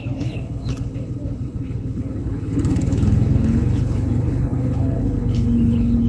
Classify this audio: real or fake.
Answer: fake